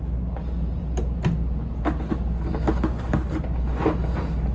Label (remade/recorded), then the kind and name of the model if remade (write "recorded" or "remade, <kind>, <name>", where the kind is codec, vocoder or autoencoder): recorded